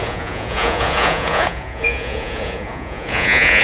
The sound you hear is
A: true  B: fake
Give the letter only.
B